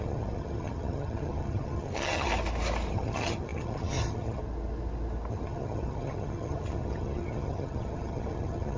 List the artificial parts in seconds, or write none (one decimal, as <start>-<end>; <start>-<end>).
0.0-2.3; 2.9-4.4; 5.3-8.8